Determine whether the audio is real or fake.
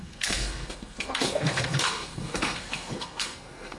fake